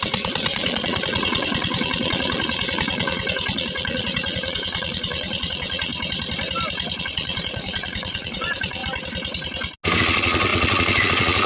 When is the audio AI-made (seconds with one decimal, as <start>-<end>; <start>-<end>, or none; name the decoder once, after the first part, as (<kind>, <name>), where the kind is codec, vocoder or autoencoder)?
0.0-5.9 (vocoder, Vocos); 7.0-8.8; 10.0-11.5